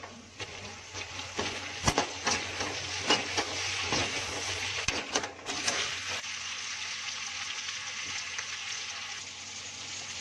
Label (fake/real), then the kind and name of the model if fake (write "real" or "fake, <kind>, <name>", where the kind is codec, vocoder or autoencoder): fake, vocoder, Vocos